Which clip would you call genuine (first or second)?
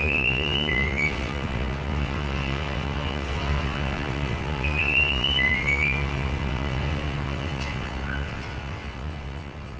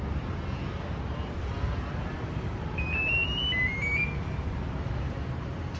second